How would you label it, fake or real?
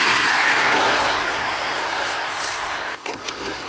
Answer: fake